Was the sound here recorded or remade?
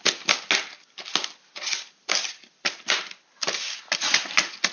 recorded